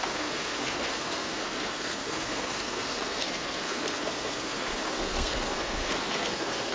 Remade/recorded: remade